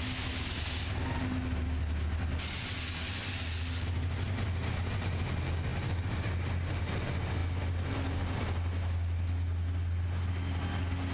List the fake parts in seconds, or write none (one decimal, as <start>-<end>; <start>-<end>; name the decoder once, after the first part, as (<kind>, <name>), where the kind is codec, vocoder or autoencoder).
none